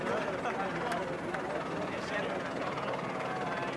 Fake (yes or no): no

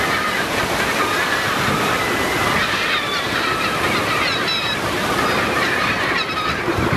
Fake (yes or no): yes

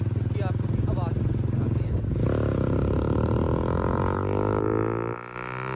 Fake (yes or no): no